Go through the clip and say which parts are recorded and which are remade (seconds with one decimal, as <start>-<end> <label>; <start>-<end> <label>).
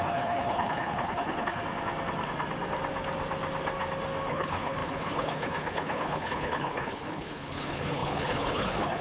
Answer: 0.0-1.6 remade; 1.6-4.3 recorded; 4.3-9.0 remade